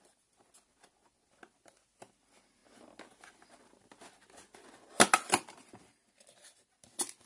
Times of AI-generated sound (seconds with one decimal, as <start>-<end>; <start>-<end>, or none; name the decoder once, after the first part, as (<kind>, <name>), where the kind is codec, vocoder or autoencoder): none

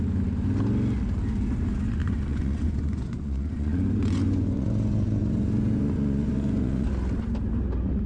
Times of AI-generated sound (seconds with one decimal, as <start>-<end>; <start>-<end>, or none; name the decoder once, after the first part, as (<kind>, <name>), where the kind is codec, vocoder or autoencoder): 2.0-6.9 (vocoder, Vocos)

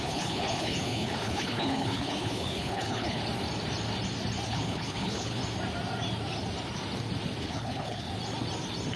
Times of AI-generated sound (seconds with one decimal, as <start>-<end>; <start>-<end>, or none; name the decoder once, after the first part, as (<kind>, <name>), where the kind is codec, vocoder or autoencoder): 0.0-3.2 (codec, HILCodec); 4.5-5.4; 7.4-8.1

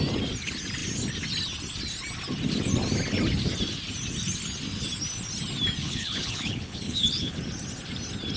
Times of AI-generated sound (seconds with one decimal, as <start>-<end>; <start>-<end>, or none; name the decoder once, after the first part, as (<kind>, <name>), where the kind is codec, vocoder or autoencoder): 5.8-7.4 (codec, HILCodec)

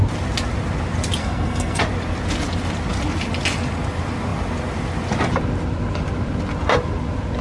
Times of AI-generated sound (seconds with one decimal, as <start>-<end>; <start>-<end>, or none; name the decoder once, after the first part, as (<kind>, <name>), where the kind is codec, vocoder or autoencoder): 1.2-1.8 (codec, SNAC)

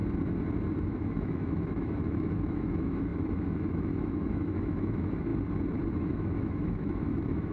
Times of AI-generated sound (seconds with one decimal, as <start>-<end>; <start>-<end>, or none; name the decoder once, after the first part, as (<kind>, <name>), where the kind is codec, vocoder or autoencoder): 0.8-5.3 (autoencoder, DAC-VAE); 5.9-7.5

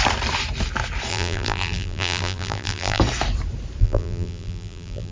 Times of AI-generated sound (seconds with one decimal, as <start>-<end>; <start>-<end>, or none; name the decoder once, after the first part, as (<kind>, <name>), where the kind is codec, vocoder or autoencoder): 1.1-3.0 (vocoder, BigVGAN v2); 3.8-5.1